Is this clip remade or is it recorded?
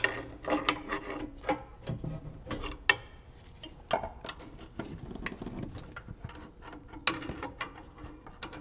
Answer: recorded